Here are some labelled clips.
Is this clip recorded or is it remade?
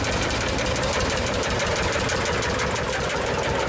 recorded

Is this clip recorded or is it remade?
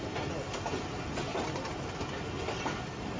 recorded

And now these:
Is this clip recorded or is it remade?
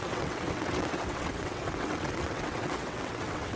remade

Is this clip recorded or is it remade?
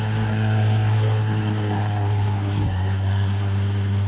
remade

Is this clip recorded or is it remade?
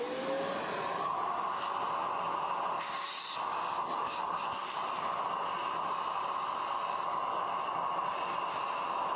recorded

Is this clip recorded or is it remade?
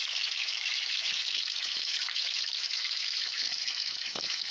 remade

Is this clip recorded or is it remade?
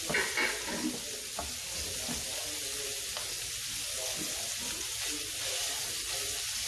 recorded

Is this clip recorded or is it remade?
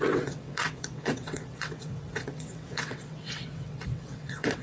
remade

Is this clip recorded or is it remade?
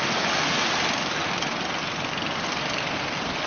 recorded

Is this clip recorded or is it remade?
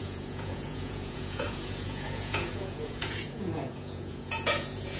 remade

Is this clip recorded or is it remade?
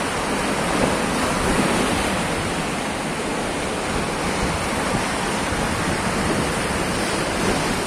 recorded